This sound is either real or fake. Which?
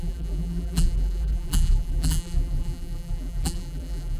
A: fake